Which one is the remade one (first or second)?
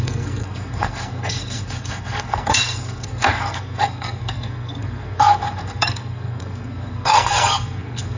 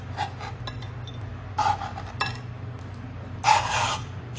first